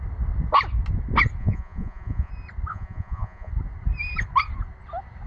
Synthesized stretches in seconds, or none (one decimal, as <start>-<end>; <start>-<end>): 1.4-2.3; 2.7-3.5